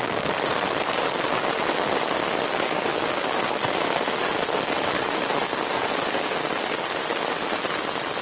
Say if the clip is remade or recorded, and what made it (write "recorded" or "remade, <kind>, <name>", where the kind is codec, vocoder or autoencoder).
recorded